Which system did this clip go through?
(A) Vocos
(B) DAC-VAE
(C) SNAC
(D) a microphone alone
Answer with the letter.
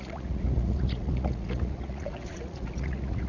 A